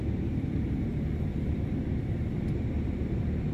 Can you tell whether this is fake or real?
real